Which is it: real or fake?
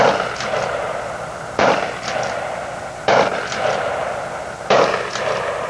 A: real